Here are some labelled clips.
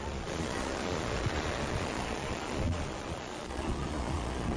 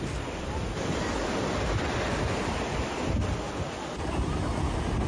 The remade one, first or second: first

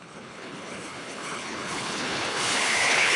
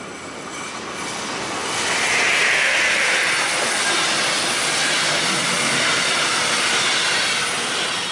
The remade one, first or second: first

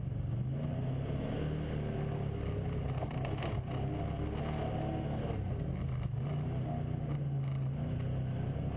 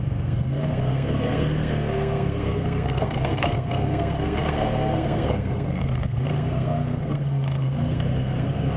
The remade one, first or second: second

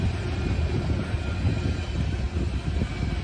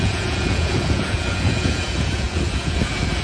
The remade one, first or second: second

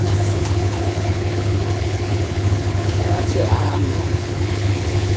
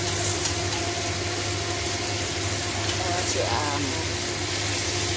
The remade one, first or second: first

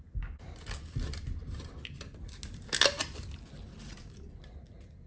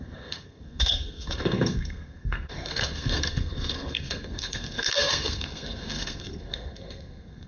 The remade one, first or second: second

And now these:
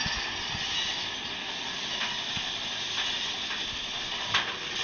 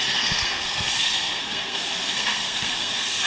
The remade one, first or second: second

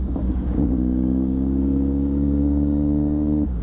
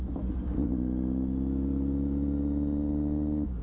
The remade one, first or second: first